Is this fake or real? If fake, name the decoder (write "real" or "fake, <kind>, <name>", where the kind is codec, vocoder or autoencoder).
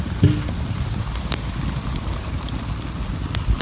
real